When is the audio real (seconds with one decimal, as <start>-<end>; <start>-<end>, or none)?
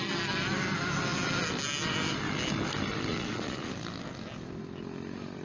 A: 0.0-3.1; 3.7-5.4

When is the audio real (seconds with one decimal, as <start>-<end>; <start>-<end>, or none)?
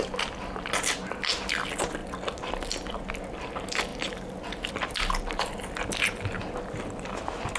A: 0.0-7.6